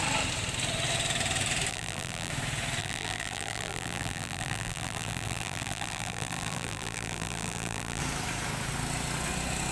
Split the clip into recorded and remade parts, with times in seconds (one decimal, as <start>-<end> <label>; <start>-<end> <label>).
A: 0.0-1.7 recorded; 1.7-2.3 remade; 2.3-2.8 recorded; 2.8-8.0 remade; 8.0-9.7 recorded

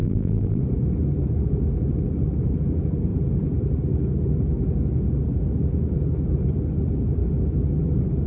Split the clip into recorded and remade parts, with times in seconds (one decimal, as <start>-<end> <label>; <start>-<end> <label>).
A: 0.0-0.6 remade; 0.6-8.3 recorded

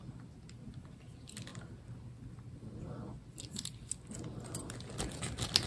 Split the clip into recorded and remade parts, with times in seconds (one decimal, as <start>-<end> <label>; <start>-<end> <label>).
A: 0.0-5.7 recorded

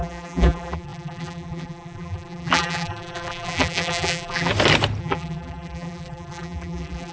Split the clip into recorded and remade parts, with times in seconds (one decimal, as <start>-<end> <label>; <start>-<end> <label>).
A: 0.0-4.5 remade; 4.5-5.0 recorded; 5.0-7.1 remade

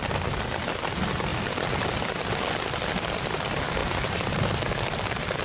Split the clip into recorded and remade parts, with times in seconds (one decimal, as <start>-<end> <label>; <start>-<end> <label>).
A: 0.0-5.4 recorded

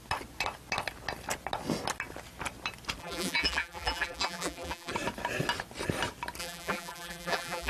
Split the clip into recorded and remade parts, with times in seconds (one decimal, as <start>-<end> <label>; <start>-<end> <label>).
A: 0.0-3.0 recorded; 3.0-4.9 remade; 4.9-6.4 recorded; 6.4-7.7 remade

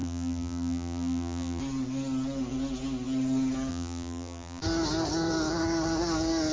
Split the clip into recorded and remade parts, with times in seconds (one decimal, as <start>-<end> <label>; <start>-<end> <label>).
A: 0.0-1.6 remade; 1.6-3.7 recorded; 3.7-4.6 remade; 4.6-6.5 recorded